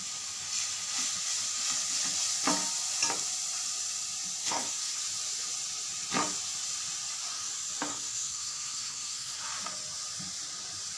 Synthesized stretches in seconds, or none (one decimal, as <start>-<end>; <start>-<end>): 4.4-5.0; 7.9-9.4